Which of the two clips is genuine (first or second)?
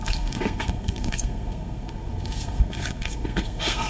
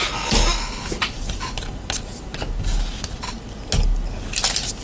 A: second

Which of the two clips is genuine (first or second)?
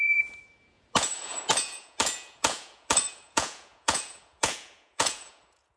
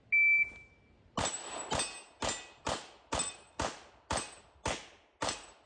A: second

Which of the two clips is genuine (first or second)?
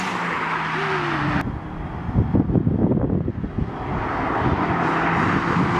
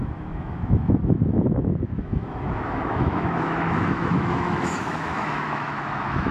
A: first